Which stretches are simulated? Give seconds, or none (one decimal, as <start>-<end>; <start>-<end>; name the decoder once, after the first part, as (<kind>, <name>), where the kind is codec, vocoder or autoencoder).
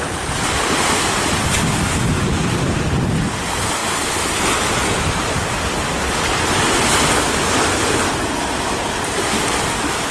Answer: none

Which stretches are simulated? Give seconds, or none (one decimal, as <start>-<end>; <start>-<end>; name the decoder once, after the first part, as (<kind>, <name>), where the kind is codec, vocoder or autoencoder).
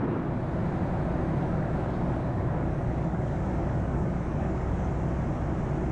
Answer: 1.4-4.9 (codec, DAC)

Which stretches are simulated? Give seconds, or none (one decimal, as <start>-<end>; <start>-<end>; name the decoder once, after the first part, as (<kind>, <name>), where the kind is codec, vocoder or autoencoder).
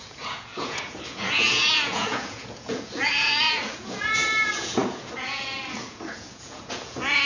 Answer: 0.0-7.3 (vocoder, Vocos)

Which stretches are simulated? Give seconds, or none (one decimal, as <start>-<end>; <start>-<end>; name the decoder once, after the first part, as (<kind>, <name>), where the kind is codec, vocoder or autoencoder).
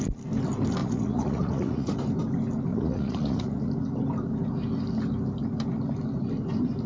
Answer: 0.8-1.9 (vocoder, Vocos); 2.7-3.7